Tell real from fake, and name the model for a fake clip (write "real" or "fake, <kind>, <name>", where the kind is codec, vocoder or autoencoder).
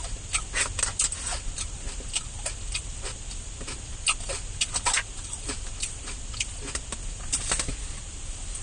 real